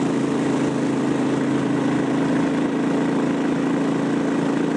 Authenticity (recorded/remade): recorded